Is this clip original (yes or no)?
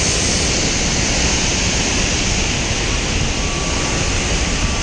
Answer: yes